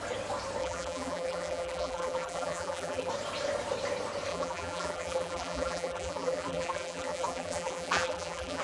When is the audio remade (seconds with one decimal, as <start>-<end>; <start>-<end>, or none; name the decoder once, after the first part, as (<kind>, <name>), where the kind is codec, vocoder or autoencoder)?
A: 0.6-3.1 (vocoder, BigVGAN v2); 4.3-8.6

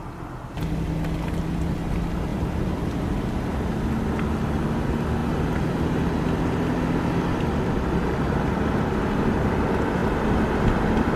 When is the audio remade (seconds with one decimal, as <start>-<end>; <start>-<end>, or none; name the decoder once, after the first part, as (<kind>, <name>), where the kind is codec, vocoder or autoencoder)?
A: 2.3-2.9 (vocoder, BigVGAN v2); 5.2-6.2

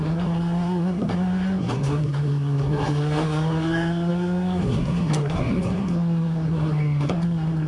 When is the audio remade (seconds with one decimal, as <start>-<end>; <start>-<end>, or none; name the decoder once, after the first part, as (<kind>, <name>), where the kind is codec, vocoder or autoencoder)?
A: 0.0-7.7 (codec, SNAC)

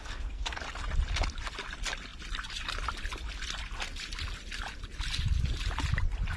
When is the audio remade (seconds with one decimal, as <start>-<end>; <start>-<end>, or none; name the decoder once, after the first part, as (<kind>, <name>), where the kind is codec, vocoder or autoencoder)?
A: 0.0-0.6 (codec, SNAC)

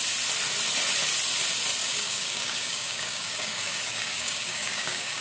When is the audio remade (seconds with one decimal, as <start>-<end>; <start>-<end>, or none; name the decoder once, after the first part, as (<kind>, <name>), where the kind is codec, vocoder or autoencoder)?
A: 1.8-5.2 (codec, DAC)

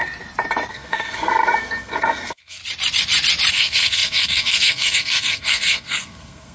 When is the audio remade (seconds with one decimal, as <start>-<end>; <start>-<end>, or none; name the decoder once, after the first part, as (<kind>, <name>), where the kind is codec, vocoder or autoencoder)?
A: 0.7-2.6 (codec, SNAC); 3.5-6.5

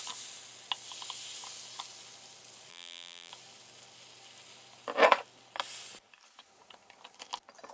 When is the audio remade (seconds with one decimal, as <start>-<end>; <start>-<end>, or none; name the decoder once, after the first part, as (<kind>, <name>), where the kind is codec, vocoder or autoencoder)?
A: 2.7-3.3 (vocoder, BigVGAN v2)

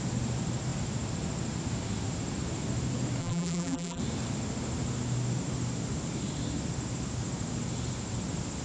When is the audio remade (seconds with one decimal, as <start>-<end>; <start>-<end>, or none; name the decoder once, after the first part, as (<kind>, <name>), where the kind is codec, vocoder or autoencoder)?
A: 3.2-4.0 (vocoder, BigVGAN v2)